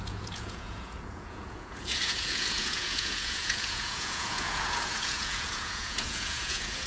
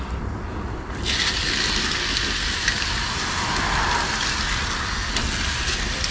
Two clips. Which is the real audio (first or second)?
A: second